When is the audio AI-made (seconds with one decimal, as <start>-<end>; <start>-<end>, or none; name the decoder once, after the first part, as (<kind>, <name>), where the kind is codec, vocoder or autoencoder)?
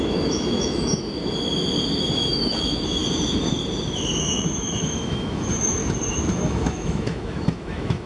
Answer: 0.0-1.0 (autoencoder, DAC-VAE); 2.0-3.0; 4.2-5.8; 6.3-8.1